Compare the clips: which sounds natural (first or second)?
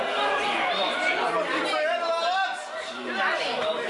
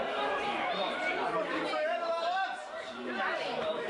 first